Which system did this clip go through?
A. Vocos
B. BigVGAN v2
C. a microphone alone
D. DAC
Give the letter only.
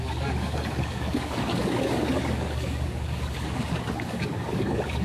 D